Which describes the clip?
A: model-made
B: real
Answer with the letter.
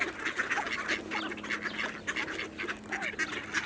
B